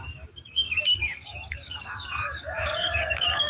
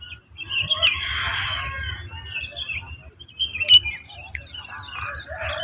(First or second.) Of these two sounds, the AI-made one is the first